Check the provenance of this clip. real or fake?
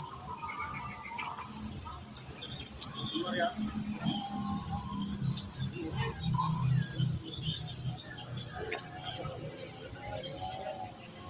real